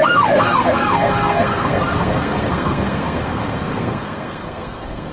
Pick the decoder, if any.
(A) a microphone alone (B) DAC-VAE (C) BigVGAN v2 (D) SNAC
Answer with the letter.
D